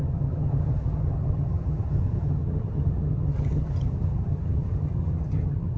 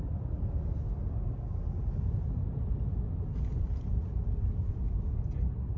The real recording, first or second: second